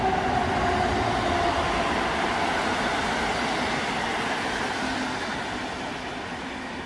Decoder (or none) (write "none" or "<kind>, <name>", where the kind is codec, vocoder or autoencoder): none